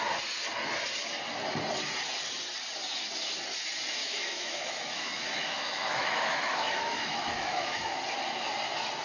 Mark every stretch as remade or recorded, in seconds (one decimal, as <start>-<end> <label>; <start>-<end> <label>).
0.0-4.0 recorded; 4.0-8.0 remade; 8.0-9.0 recorded